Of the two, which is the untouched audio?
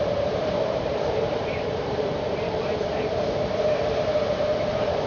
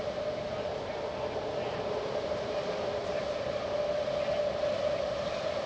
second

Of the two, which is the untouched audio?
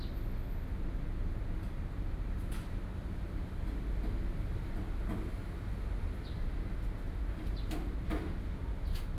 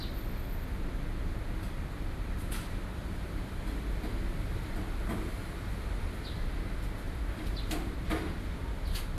first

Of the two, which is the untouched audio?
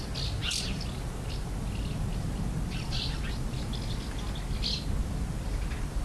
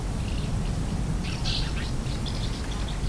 first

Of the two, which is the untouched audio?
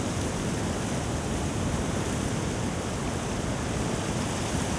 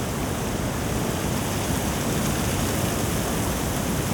second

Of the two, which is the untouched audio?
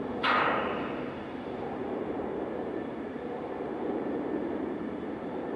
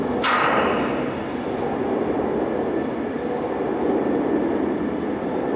second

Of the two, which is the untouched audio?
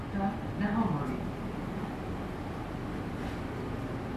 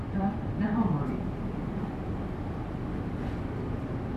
first